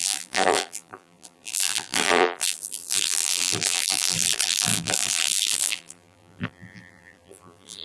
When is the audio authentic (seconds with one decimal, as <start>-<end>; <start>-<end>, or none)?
none